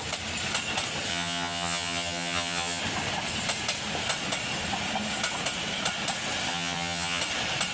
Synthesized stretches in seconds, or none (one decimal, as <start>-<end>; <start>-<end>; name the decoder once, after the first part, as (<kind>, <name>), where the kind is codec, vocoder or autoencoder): 1.1-2.8 (vocoder, HiFi-GAN); 6.5-7.2